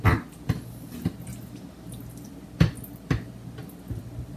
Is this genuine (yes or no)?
yes